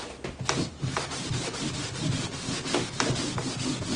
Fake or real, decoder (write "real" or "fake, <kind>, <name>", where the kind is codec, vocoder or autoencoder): real